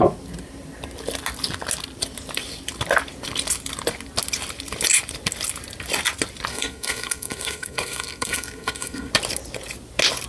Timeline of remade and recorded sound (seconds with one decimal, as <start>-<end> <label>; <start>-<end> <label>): 0.0-6.5 recorded; 6.5-9.1 remade; 9.1-10.3 recorded